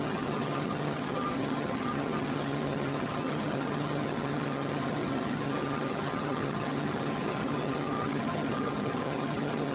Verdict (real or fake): fake